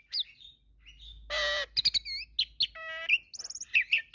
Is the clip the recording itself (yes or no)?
yes